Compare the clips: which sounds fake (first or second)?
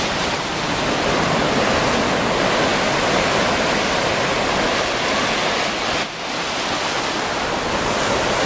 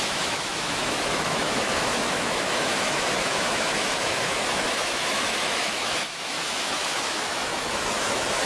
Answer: second